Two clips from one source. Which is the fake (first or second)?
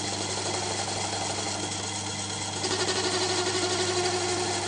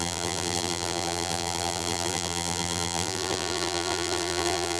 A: second